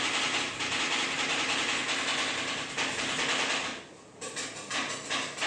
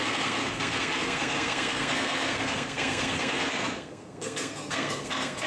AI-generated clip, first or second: second